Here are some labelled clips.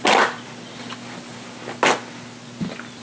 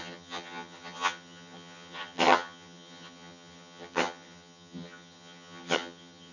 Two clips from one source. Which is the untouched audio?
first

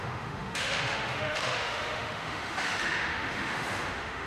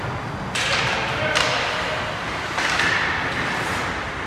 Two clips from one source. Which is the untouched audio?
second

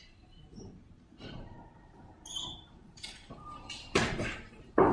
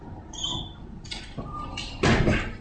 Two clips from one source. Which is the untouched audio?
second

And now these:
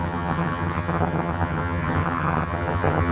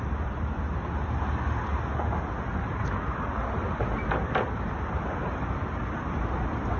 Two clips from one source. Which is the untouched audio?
second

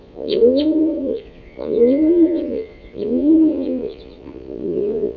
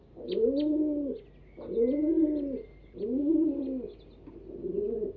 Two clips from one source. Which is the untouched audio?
second